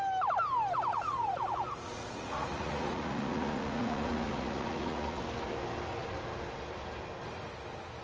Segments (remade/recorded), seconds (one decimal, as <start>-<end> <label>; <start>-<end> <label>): 0.0-0.9 recorded; 0.9-5.2 remade; 5.2-8.0 recorded